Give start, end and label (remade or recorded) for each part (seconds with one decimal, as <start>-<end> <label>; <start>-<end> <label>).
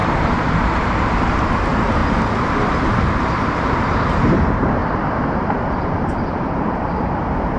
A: 0.0-2.0 remade; 2.0-2.6 recorded; 2.6-4.8 remade; 4.8-5.6 recorded; 5.6-7.6 remade